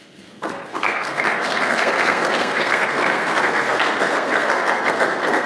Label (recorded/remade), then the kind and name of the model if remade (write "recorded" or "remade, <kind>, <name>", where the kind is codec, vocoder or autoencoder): remade, codec, SNAC